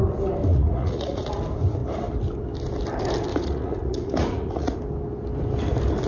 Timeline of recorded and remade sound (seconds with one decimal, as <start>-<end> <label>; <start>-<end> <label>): 0.0-0.5 recorded; 0.5-1.4 remade; 1.4-3.3 recorded; 3.3-4.8 remade; 4.8-6.1 recorded